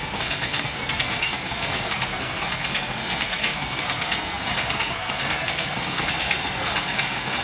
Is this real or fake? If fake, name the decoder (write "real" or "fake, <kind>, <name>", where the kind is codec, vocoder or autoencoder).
fake, codec, SNAC